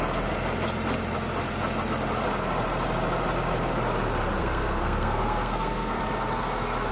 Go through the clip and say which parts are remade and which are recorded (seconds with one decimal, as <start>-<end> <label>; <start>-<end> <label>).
0.0-4.4 recorded; 4.4-6.0 remade; 6.0-6.9 recorded